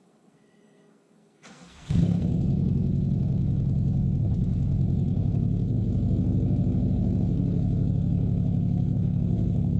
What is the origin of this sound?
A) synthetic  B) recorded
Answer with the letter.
A